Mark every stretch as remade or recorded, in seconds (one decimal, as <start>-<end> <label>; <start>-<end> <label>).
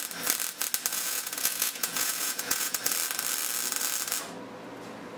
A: 0.0-0.9 recorded; 0.9-2.8 remade; 2.8-5.2 recorded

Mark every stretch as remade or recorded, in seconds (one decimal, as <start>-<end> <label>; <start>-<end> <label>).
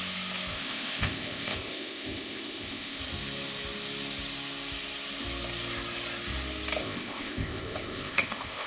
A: 0.0-0.5 recorded; 0.5-3.0 remade; 3.0-6.8 recorded; 6.8-8.7 remade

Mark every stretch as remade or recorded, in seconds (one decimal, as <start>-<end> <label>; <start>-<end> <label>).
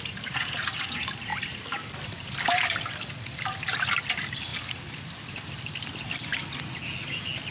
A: 0.0-1.3 recorded; 1.3-3.1 remade; 3.1-4.5 recorded; 4.5-5.9 remade; 5.9-7.5 recorded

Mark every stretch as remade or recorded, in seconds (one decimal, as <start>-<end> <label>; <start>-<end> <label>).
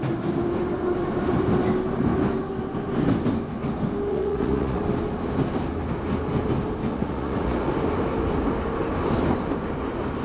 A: 0.0-4.1 recorded; 4.1-4.8 remade; 4.8-6.9 recorded; 6.9-7.7 remade; 7.7-10.2 recorded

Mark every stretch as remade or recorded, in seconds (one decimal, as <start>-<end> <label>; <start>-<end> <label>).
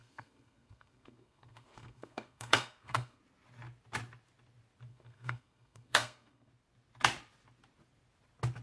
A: 0.0-3.2 remade; 3.2-4.9 recorded; 4.9-6.5 remade; 6.5-8.6 recorded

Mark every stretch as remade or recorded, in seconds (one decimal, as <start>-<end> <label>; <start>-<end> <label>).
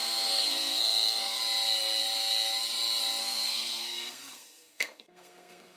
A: 0.0-1.4 remade; 1.4-3.2 recorded; 3.2-5.8 remade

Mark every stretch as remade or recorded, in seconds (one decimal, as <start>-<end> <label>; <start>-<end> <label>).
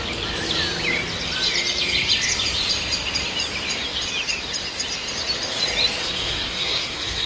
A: 0.0-6.0 recorded; 6.0-7.3 remade